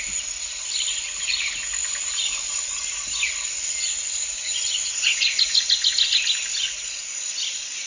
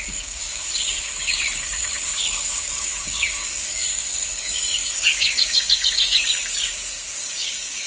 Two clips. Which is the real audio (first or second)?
first